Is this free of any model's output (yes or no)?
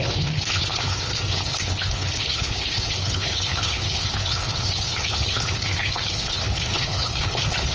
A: no